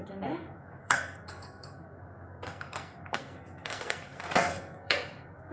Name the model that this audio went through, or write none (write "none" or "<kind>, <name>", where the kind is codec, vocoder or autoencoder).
codec, SNAC